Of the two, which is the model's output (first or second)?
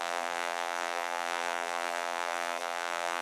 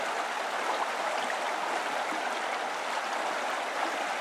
first